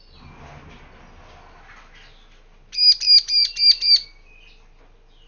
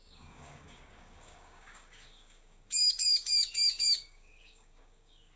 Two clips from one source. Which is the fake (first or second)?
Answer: second